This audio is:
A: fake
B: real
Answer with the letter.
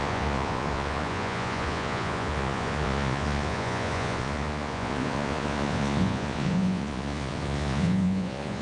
A